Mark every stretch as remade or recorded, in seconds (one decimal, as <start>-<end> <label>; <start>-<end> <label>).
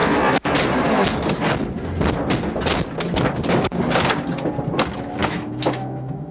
0.0-5.2 recorded; 5.2-6.3 remade